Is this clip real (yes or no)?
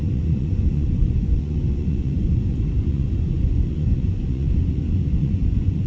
no